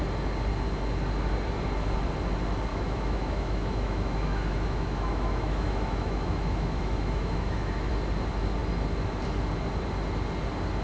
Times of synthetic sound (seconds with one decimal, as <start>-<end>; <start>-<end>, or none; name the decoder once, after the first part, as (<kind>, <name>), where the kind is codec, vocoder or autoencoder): 2.7-7.9 (autoencoder, DAC-VAE)